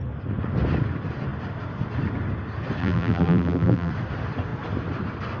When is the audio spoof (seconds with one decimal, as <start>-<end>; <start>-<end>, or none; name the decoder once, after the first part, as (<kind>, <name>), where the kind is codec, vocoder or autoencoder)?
2.8-3.9 (vocoder, BigVGAN v2)